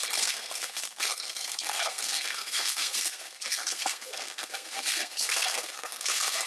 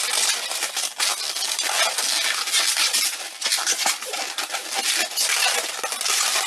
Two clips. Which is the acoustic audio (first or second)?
second